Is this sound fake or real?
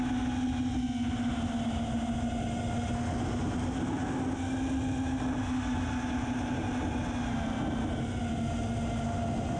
real